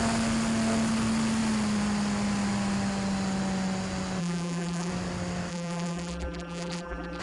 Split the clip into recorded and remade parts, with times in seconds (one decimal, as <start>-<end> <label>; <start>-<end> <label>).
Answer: 0.0-4.2 recorded; 4.2-4.9 remade; 4.9-5.5 recorded; 5.5-7.2 remade